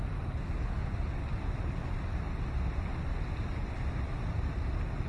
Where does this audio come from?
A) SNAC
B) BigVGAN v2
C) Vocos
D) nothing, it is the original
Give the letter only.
D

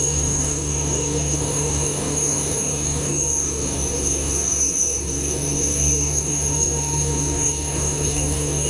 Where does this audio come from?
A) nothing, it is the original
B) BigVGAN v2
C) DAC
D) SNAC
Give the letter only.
C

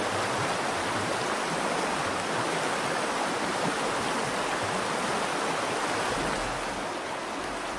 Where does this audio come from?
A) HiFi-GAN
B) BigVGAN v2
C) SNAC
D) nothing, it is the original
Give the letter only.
D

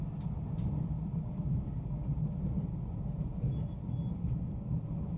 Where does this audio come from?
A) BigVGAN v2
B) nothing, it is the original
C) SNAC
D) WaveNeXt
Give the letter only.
B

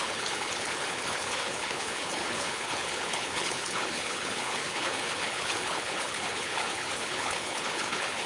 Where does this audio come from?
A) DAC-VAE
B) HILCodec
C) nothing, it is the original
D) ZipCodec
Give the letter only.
B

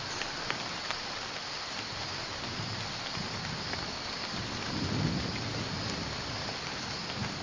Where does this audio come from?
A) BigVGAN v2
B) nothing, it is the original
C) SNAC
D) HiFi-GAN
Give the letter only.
B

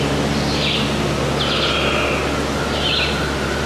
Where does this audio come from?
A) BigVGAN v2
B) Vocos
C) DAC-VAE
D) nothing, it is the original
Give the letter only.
D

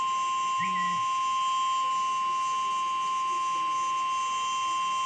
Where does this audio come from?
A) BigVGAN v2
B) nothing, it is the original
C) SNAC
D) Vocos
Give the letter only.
B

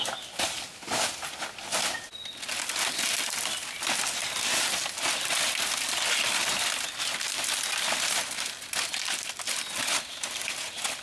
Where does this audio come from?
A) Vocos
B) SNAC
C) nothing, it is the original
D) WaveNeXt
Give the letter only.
C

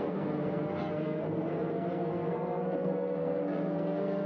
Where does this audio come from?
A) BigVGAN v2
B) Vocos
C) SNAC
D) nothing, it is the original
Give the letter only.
C